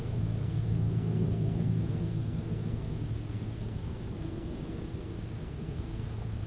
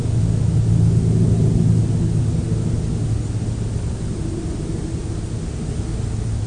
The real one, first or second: second